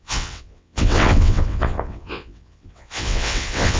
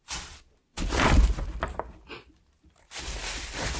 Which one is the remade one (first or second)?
first